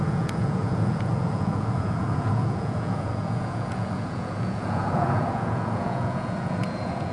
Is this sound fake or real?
fake